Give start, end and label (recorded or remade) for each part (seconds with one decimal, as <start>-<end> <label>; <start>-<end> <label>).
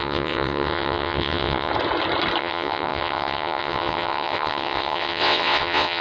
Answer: 0.0-1.7 remade; 1.7-2.4 recorded; 2.4-6.0 remade